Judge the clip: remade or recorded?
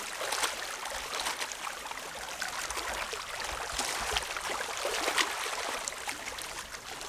recorded